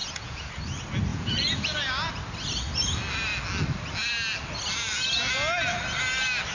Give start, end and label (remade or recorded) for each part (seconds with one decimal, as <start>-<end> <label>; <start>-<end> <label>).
0.0-0.5 remade; 0.5-1.1 recorded; 1.1-2.1 remade; 2.1-6.5 recorded